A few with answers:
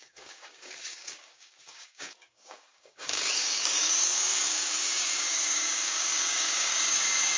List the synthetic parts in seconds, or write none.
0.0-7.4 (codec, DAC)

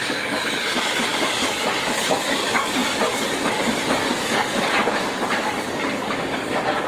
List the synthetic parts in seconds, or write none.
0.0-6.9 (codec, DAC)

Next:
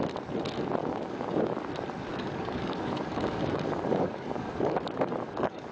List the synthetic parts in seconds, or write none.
0.8-1.7 (codec, DAC); 2.1-5.7

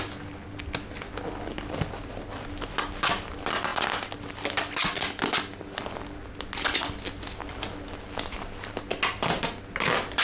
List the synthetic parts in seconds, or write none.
none

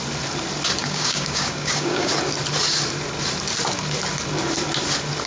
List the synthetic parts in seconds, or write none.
0.8-2.1 (codec, DAC)

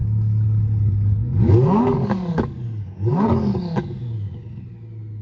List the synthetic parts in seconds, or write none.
0.0-4.0 (codec, DAC)

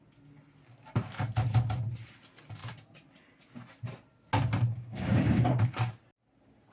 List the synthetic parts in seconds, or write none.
4.7-5.4 (codec, DAC)

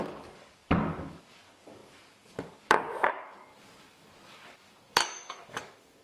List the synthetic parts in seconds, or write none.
0.0-6.0 (codec, DAC)